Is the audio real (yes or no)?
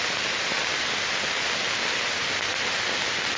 yes